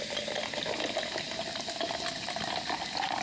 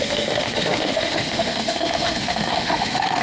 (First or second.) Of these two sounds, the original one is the first